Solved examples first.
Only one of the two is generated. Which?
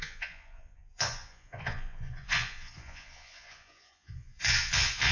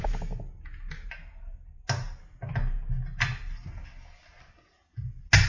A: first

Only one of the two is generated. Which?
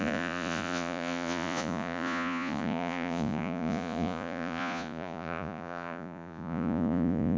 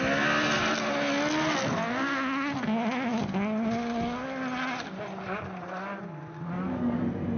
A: first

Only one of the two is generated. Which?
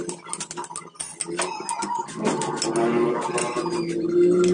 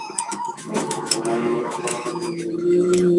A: second